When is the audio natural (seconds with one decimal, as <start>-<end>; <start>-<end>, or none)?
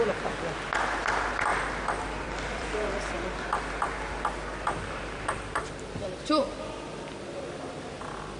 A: 0.0-1.5; 6.5-8.4